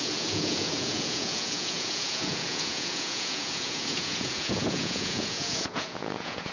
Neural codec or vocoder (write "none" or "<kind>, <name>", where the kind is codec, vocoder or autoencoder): vocoder, Vocos